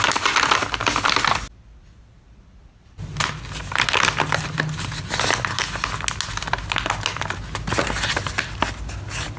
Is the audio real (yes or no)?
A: yes